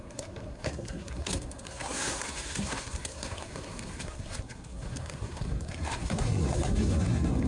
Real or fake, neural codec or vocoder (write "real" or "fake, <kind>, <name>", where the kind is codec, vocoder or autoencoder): fake, codec, SNAC